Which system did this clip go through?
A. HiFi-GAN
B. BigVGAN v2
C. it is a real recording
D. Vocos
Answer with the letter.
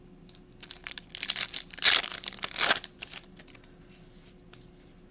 C